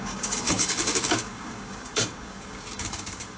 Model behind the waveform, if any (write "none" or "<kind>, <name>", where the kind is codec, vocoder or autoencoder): codec, DAC